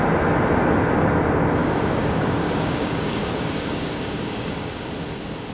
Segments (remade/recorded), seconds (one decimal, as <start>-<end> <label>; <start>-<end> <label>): 0.0-1.6 recorded; 1.6-4.9 remade; 4.9-5.5 recorded